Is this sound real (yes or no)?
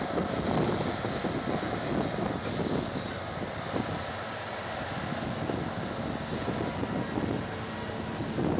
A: yes